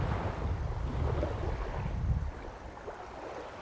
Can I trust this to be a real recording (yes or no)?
yes